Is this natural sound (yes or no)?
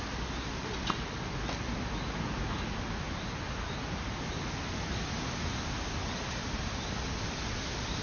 yes